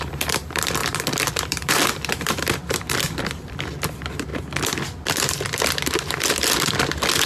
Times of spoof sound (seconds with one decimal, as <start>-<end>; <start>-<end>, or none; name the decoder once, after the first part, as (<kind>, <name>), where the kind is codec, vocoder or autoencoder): 0.0-4.3 (vocoder, BigVGAN v2); 5.0-7.3